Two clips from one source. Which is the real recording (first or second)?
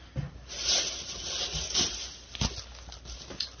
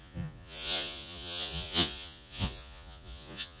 first